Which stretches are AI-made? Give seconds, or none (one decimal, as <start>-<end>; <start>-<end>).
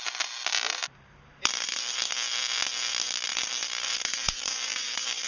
0.8-2.1; 3.3-5.3